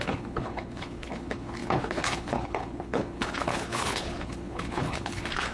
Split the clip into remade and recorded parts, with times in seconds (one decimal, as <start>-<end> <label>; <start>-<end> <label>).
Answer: 0.0-5.5 remade